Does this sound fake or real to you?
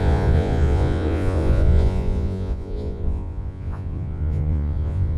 fake